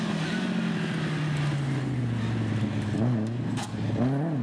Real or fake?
real